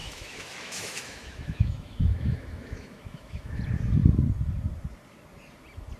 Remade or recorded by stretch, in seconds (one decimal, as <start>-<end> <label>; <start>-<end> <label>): 0.0-3.6 remade; 3.6-6.0 recorded